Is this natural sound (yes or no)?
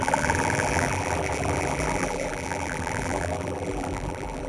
no